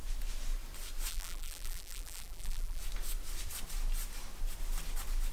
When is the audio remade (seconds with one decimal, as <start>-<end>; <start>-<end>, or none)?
1.1-2.8